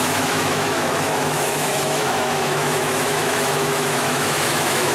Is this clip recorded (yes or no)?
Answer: no